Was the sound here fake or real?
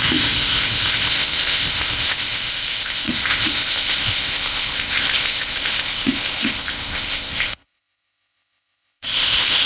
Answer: fake